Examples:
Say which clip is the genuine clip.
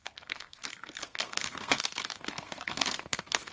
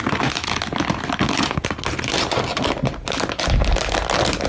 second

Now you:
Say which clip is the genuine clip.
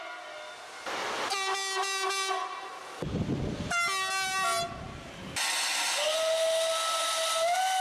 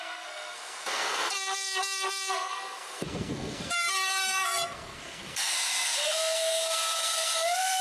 first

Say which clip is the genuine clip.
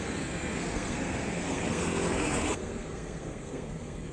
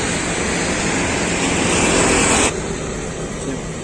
second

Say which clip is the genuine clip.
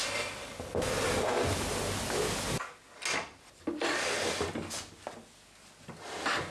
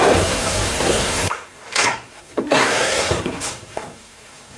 first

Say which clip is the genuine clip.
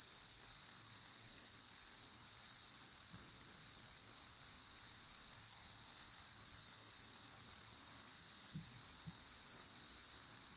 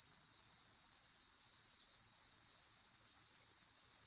second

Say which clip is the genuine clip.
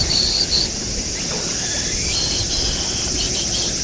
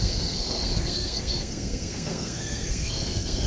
first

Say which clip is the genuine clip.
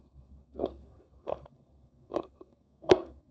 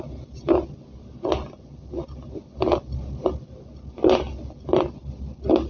second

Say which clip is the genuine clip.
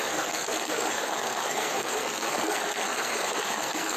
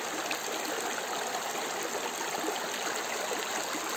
second